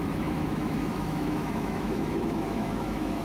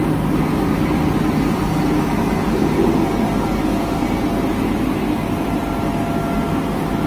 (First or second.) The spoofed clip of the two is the first